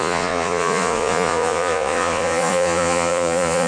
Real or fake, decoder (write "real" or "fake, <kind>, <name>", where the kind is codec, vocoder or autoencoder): fake, vocoder, Vocos